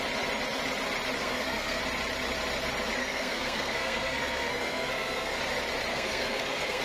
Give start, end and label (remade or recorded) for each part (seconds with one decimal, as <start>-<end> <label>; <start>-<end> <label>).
0.0-1.2 recorded; 1.2-1.8 remade; 1.8-3.0 recorded; 3.0-5.4 remade; 5.4-5.9 recorded; 5.9-6.8 remade